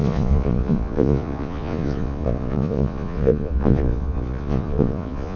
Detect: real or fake fake